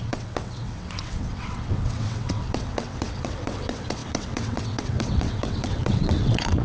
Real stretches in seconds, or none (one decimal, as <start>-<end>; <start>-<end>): none